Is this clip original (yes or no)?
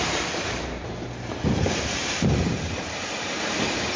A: no